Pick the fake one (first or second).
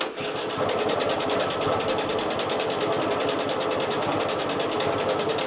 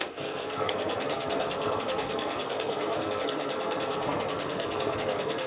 second